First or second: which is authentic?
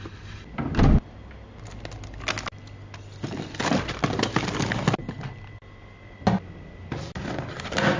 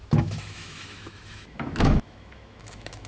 first